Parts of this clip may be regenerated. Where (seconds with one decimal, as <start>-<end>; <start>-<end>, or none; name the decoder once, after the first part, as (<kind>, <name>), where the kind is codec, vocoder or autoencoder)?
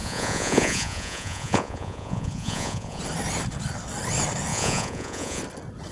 0.0-3.0 (vocoder, Vocos); 4.5-5.4